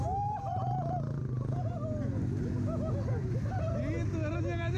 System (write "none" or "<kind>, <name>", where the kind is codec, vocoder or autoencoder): none